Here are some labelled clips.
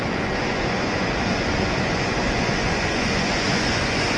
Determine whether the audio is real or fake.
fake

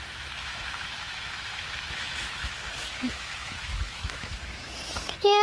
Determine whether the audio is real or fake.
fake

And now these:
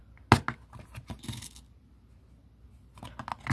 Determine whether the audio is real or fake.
real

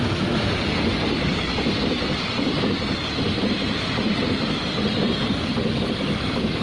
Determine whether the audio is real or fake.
real